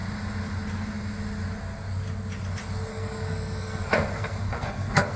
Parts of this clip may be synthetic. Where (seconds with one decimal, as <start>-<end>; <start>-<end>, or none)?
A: 2.9-5.2